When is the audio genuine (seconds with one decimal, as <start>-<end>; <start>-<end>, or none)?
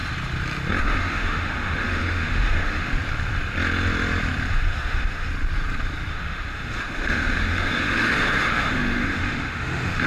0.0-0.8; 2.9-4.5; 5.3-6.1